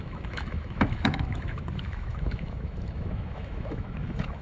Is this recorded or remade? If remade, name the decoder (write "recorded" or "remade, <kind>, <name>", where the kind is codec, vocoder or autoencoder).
remade, autoencoder, DAC-VAE